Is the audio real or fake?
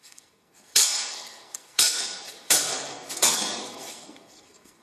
fake